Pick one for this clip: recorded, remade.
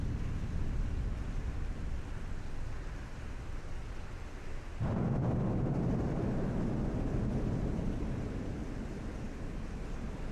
recorded